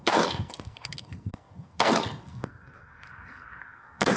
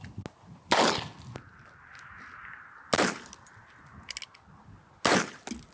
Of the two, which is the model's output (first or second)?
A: first